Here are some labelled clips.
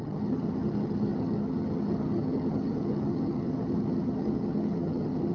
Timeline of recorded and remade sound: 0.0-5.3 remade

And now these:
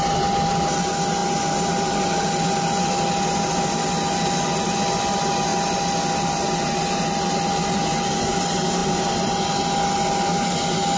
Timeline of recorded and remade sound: 0.0-11.0 recorded

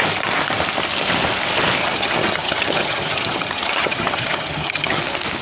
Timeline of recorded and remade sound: 0.0-1.8 recorded; 1.8-5.0 remade; 5.0-5.4 recorded

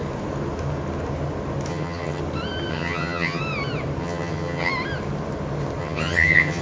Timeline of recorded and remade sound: 0.0-1.7 recorded; 1.7-2.2 remade; 2.2-2.7 recorded; 2.7-3.4 remade; 3.4-4.0 recorded; 4.0-4.7 remade; 4.7-5.8 recorded; 5.8-6.6 remade

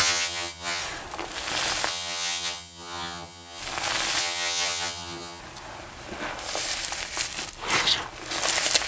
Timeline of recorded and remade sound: 0.0-0.8 remade; 0.8-1.9 recorded; 1.9-3.6 remade; 3.6-4.2 recorded; 4.2-5.4 remade; 5.4-8.9 recorded

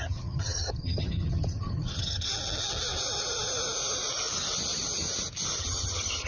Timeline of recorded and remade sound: 0.0-2.3 remade; 2.3-5.6 recorded; 5.6-6.3 remade

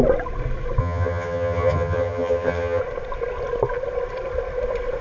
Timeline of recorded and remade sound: 0.0-0.8 recorded; 0.8-2.8 remade; 2.8-5.0 recorded